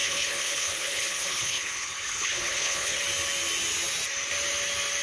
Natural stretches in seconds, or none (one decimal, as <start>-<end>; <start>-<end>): 3.0-5.0